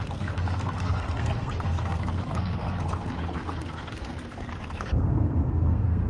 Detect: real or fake fake